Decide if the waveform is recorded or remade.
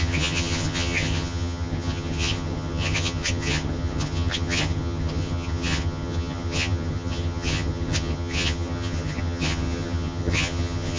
remade